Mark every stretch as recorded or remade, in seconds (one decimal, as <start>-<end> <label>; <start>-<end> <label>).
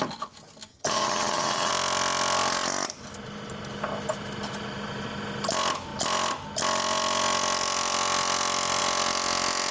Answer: 0.0-0.7 recorded; 0.7-1.7 remade; 1.7-9.7 recorded